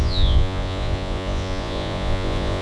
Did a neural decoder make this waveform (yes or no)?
yes